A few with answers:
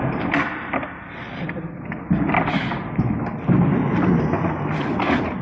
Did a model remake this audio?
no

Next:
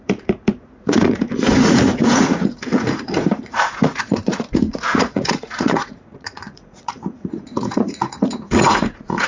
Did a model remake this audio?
yes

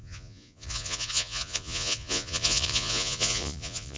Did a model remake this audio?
yes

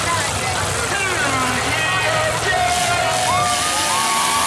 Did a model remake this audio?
no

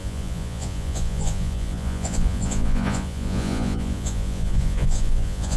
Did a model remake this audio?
yes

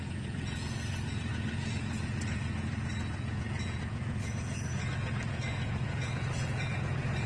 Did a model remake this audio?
yes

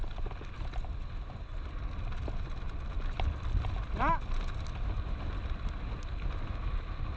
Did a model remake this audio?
no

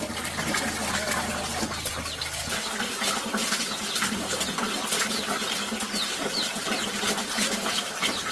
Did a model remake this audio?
no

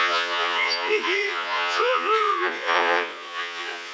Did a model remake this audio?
yes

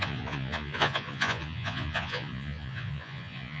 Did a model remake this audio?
yes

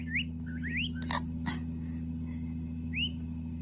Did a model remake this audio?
no